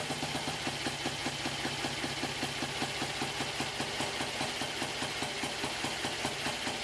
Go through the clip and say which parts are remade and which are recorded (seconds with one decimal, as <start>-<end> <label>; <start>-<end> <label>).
0.0-6.8 recorded